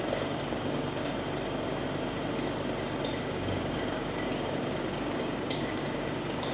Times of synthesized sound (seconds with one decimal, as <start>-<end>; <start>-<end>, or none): 0.0-1.1; 3.2-6.5